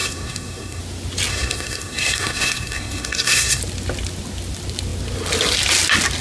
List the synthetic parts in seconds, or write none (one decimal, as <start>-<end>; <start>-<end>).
0.0-0.8; 1.3-3.6